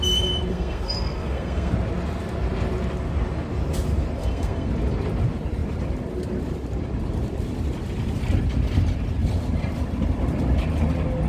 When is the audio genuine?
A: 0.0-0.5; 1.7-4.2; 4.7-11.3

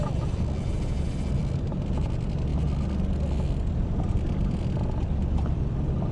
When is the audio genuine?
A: 0.0-6.1

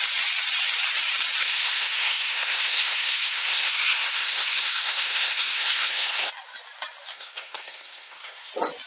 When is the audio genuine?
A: 0.0-1.4; 6.3-7.1; 8.5-8.9